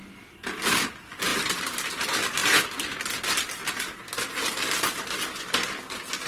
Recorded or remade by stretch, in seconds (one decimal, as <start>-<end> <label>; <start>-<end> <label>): 0.0-6.3 recorded